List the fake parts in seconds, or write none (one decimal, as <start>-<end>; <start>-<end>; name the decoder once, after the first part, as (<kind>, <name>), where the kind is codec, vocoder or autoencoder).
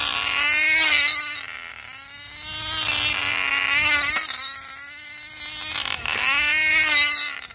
none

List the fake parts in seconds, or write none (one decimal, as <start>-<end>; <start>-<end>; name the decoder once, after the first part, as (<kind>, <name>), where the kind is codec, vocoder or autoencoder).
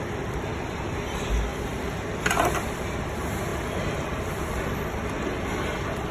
none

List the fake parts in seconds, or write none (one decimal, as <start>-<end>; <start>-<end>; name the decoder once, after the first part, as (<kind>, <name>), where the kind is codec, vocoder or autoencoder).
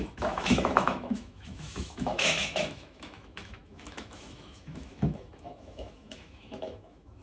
0.0-7.2 (autoencoder, DAC-VAE)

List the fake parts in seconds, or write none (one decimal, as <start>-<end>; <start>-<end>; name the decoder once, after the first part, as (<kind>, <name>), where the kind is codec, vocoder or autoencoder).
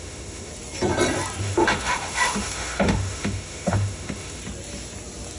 0.0-0.5 (autoencoder, DAC-VAE); 1.4-4.4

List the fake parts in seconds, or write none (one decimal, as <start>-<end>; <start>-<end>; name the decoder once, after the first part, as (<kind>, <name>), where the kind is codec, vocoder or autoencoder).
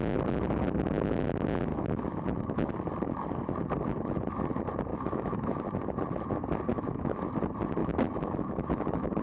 1.7-2.7 (autoencoder, DAC-VAE); 4.9-5.6; 6.7-7.3; 7.8-9.2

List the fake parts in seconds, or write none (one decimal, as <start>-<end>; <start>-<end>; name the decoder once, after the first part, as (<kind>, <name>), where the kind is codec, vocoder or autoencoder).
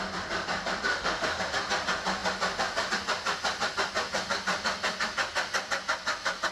0.9-1.4 (autoencoder, DAC-VAE)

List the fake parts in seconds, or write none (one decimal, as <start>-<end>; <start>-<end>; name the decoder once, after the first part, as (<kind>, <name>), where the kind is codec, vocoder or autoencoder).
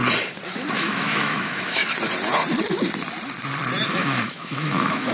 0.7-1.8 (autoencoder, DAC-VAE); 3.9-5.1